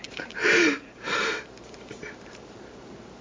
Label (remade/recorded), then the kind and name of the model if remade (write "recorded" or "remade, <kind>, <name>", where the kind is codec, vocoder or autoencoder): remade, vocoder, BigVGAN v2